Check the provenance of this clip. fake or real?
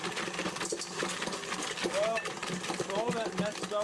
real